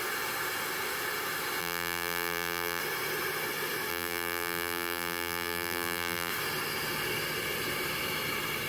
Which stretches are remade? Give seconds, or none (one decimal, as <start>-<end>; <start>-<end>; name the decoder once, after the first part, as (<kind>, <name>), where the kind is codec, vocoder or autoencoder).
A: 1.6-2.8 (vocoder, BigVGAN v2); 3.9-6.3